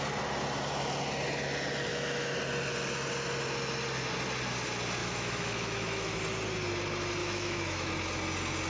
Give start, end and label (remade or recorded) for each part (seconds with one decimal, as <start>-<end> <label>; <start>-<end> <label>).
0.0-1.9 recorded; 1.9-2.4 remade; 2.4-5.0 recorded; 5.0-6.2 remade; 6.2-7.2 recorded; 7.2-7.9 remade; 7.9-8.7 recorded